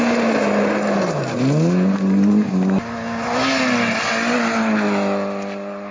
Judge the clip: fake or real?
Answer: real